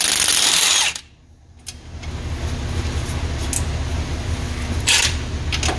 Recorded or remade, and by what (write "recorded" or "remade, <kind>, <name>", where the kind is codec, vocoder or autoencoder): recorded